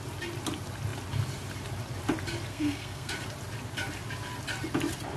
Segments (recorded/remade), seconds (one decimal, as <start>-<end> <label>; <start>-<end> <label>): 0.0-2.5 recorded; 2.5-3.1 remade; 3.1-5.2 recorded